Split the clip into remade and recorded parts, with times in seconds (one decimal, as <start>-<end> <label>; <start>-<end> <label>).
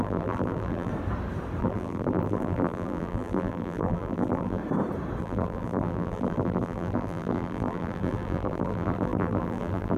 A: 0.0-0.9 remade; 0.9-1.6 recorded; 1.6-4.6 remade; 4.6-5.2 recorded; 5.2-10.0 remade